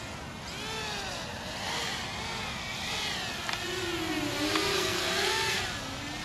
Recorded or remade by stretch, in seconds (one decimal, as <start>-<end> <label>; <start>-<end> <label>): 0.0-4.7 recorded; 4.7-5.6 remade; 5.6-6.2 recorded